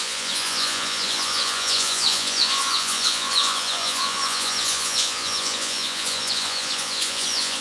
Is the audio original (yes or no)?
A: no